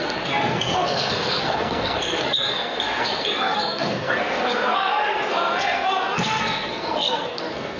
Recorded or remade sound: remade